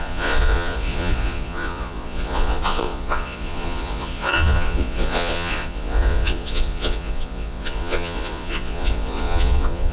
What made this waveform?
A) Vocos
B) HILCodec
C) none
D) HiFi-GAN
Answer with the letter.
A